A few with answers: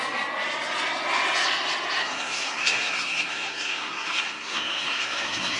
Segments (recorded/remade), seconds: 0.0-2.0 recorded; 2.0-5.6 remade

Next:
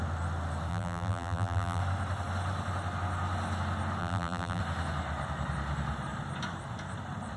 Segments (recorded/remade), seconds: 0.0-0.7 recorded; 0.7-1.8 remade; 1.8-4.0 recorded; 4.0-4.6 remade; 4.6-7.4 recorded